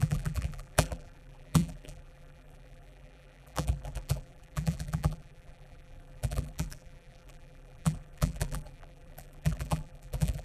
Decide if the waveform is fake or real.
fake